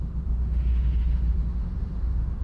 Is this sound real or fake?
fake